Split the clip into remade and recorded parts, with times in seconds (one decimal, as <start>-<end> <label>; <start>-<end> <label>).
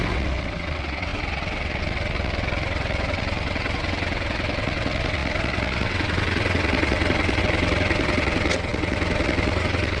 0.0-10.0 remade